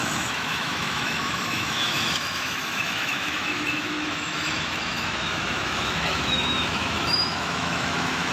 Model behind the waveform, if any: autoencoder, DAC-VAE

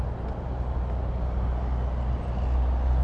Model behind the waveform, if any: none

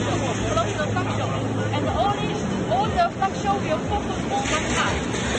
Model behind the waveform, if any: none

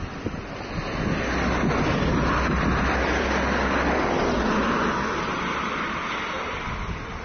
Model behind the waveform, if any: none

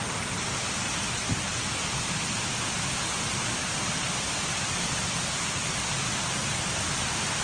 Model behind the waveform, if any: none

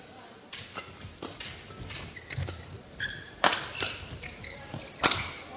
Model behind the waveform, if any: none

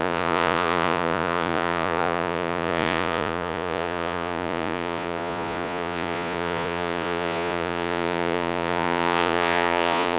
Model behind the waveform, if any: vocoder, Vocos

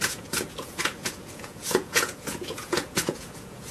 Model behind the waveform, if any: vocoder, Vocos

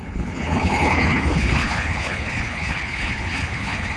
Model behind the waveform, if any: codec, HILCodec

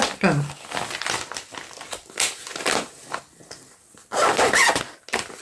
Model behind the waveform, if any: none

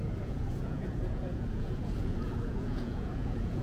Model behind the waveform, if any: vocoder, Vocos